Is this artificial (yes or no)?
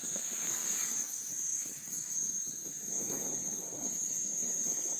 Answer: yes